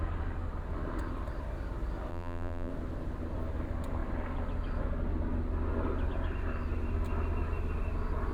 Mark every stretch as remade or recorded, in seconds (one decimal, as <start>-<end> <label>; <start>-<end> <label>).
0.0-2.1 recorded; 2.1-2.7 remade; 2.7-8.3 recorded